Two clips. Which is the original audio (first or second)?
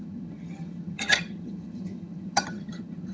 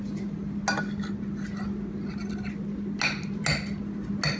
second